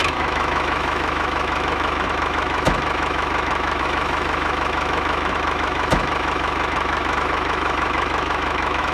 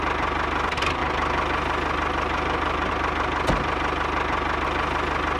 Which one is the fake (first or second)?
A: first